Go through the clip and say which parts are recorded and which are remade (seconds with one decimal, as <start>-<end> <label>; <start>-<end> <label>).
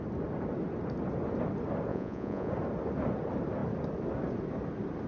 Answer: 0.0-1.9 recorded; 1.9-2.5 remade; 2.5-5.1 recorded